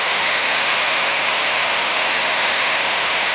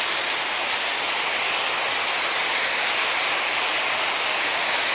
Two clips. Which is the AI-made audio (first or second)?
first